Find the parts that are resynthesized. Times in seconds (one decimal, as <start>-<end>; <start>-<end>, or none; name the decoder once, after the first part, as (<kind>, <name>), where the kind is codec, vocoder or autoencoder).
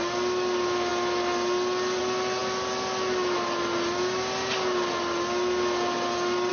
none